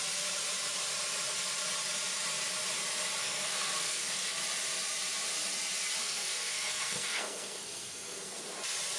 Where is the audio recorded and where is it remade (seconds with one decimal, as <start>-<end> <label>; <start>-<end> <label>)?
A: 0.0-3.2 recorded; 3.2-4.4 remade; 4.4-6.0 recorded; 6.0-8.4 remade; 8.4-9.0 recorded